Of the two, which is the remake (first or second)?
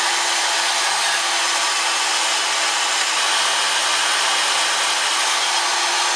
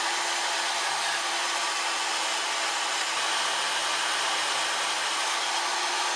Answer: second